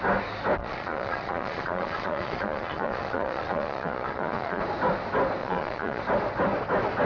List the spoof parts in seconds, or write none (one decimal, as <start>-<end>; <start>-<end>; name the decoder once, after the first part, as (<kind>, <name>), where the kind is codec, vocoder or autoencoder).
0.6-4.6 (vocoder, Vocos); 5.4-6.0